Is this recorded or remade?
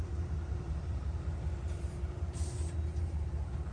remade